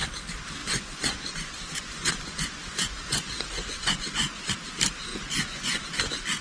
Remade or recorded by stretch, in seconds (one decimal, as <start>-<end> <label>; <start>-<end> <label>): 0.0-0.6 recorded; 0.6-4.4 remade; 4.4-5.1 recorded; 5.1-5.8 remade; 5.8-6.4 recorded